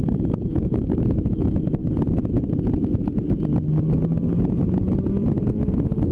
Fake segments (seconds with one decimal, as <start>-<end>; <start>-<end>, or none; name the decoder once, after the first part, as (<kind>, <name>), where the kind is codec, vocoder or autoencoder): 0.0-1.8 (autoencoder, DAC-VAE); 5.5-6.1